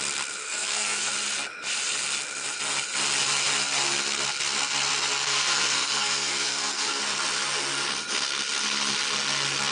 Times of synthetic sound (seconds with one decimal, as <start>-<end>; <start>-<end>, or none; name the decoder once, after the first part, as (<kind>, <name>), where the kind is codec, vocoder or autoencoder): 0.4-1.1 (codec, SNAC); 5.2-7.0